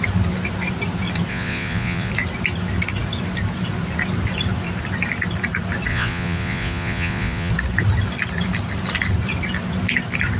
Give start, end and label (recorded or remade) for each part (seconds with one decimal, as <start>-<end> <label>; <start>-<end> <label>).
0.0-1.3 recorded; 1.3-2.1 remade; 2.1-5.9 recorded; 5.9-7.5 remade; 7.5-10.4 recorded